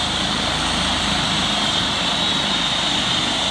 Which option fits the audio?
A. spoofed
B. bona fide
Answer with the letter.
B